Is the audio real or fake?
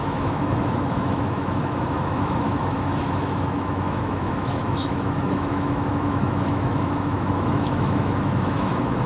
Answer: fake